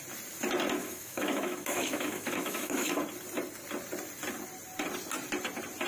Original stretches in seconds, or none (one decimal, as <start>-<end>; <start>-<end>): 0.0-0.8; 3.0-5.9